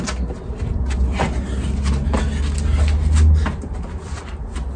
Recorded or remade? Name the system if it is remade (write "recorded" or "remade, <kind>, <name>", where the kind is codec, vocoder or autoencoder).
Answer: recorded